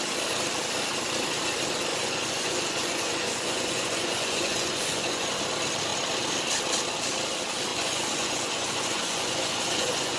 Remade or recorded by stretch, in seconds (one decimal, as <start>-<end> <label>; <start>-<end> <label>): 0.0-1.9 recorded; 1.9-5.3 remade; 5.3-7.7 recorded; 7.7-10.2 remade